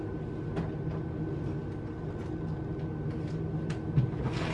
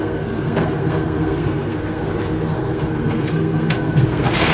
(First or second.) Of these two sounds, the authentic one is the first